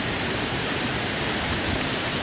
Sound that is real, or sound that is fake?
fake